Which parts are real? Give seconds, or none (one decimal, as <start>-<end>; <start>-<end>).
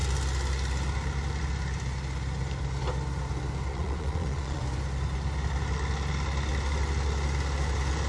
0.0-3.7; 4.6-8.1